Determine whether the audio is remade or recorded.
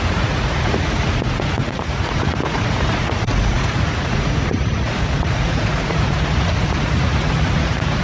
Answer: remade